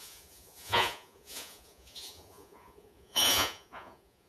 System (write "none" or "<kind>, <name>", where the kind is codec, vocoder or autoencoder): vocoder, Vocos